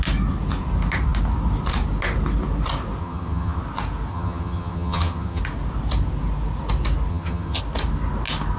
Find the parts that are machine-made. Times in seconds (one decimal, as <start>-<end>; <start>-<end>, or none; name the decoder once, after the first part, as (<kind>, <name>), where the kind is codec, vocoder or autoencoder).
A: 3.0-3.6 (vocoder, HiFi-GAN); 4.1-5.4; 7.1-7.6